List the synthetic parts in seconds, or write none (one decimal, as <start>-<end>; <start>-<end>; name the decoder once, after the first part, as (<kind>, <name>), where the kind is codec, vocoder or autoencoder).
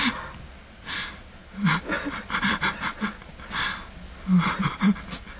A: none